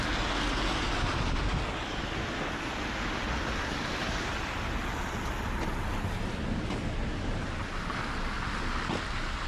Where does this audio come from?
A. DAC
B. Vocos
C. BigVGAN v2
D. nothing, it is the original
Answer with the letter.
D